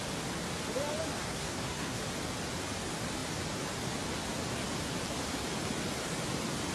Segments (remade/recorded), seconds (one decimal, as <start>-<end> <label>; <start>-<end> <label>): 0.0-1.2 recorded; 1.2-2.0 remade; 2.0-6.7 recorded